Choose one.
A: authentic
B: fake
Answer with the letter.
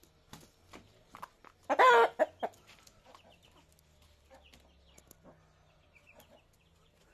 A